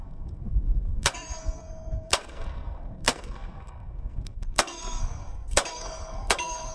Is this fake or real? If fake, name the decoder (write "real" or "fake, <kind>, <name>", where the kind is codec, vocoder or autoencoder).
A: fake, codec, SNAC